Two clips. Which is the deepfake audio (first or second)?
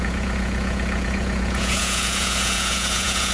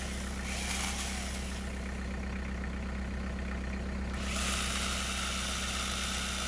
first